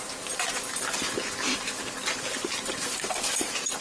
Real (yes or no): no